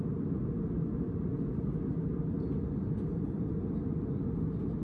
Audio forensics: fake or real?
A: real